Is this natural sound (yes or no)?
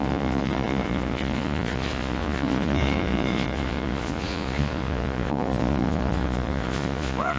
no